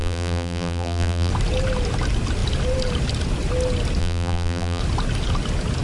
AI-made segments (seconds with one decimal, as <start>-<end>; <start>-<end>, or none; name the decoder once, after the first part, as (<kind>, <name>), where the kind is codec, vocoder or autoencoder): 0.0-1.3 (vocoder, BigVGAN v2); 4.0-4.8